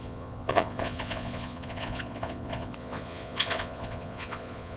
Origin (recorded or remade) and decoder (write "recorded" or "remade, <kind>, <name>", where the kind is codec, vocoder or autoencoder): remade, vocoder, Vocos